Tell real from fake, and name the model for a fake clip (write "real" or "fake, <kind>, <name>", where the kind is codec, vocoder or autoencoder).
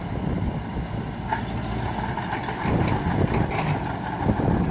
real